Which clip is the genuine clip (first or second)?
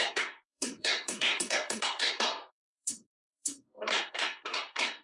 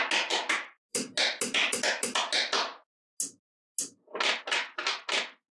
second